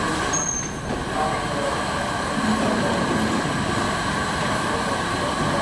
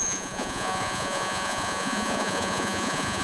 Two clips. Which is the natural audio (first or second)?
first